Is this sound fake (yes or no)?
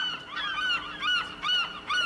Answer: no